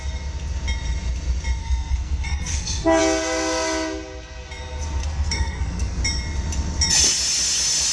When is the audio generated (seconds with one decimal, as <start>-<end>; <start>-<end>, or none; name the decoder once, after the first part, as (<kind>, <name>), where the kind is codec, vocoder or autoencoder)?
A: 1.6-3.0 (codec, SNAC); 5.0-6.0